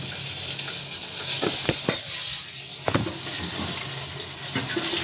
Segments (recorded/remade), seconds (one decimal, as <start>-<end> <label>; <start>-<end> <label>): 0.0-5.0 recorded